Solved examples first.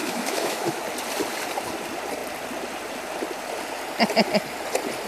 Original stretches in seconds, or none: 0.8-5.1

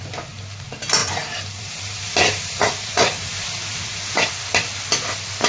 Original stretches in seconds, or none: 0.0-1.0; 4.3-5.5

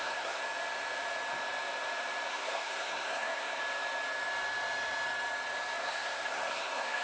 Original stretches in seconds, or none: 0.4-2.3; 3.6-5.8

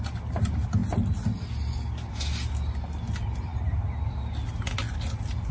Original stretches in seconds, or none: 0.0-5.5

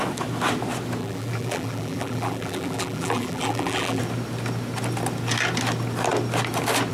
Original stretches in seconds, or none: 0.0-1.0; 4.0-6.9

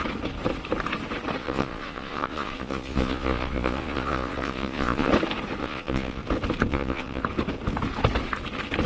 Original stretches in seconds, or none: 0.0-1.4; 5.1-5.6; 6.2-6.7; 7.2-8.9